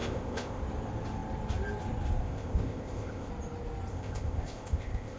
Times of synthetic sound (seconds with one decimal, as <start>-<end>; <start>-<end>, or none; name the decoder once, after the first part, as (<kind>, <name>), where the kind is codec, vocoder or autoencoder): 0.0-0.6 (codec, ZipCodec); 2.2-3.3; 3.9-5.2